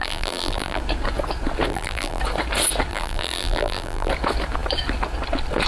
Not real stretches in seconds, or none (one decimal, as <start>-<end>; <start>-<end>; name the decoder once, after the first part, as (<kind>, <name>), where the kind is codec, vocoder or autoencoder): 0.0-0.8 (vocoder, BigVGAN v2); 1.7-2.2; 2.9-4.1

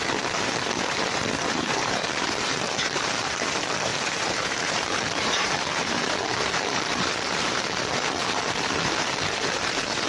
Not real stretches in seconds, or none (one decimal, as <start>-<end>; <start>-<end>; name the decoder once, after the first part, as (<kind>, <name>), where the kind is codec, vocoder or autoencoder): 0.0-10.1 (vocoder, BigVGAN v2)

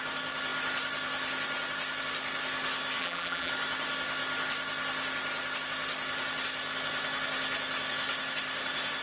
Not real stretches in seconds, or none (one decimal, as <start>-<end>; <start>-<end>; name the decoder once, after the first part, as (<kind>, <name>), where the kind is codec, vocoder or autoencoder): 3.0-3.5 (vocoder, BigVGAN v2)

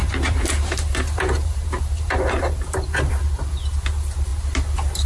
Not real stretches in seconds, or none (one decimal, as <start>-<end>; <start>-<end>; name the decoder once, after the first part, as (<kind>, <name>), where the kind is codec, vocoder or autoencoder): 0.0-3.1 (vocoder, BigVGAN v2)

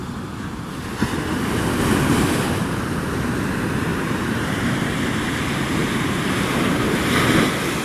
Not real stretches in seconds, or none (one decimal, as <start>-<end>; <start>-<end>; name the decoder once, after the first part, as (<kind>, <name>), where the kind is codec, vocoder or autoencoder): 0.0-0.9 (vocoder, BigVGAN v2); 3.9-4.7; 5.8-7.3

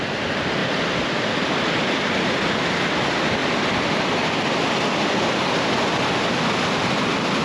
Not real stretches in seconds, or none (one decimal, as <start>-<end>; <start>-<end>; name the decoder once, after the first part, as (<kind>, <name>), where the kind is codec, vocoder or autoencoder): 0.6-2.5 (vocoder, BigVGAN v2); 3.4-5.8

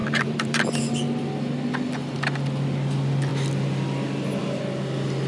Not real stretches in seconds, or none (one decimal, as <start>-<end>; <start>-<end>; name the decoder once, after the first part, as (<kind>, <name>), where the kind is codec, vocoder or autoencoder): 0.0-0.8 (vocoder, BigVGAN v2)